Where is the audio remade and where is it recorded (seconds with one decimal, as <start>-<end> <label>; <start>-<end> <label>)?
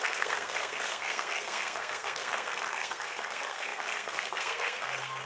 0.0-5.2 remade